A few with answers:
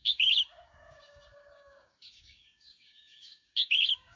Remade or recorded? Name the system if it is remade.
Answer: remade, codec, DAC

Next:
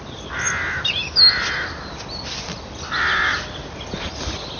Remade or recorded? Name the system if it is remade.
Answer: recorded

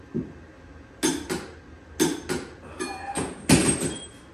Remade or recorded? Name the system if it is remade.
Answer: recorded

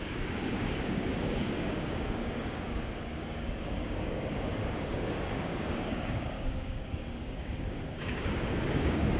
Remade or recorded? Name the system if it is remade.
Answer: remade, codec, DAC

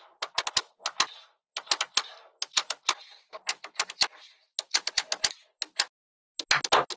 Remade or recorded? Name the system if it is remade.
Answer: recorded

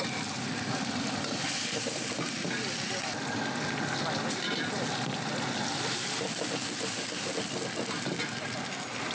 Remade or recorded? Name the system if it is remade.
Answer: recorded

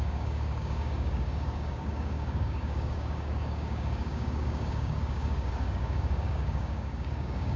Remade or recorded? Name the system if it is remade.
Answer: remade, codec, DAC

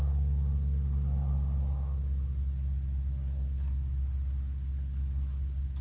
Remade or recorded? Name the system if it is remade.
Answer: recorded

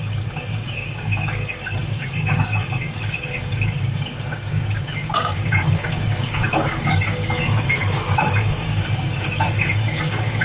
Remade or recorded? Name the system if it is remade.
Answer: remade, codec, DAC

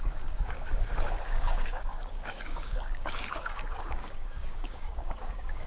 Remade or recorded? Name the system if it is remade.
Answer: remade, codec, DAC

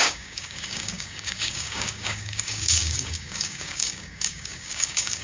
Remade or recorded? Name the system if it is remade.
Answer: remade, codec, DAC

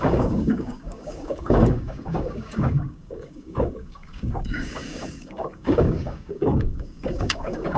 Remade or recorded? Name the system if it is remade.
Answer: remade, codec, DAC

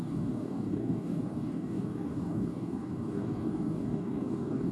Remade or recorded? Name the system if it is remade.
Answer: remade, codec, DAC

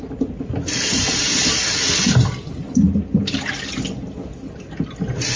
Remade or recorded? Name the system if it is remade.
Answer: recorded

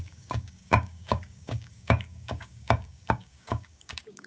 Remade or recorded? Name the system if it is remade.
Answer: remade, codec, DAC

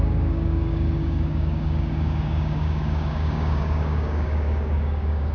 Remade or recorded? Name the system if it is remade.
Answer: remade, codec, DAC